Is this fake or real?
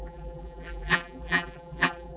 fake